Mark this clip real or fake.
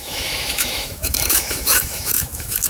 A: fake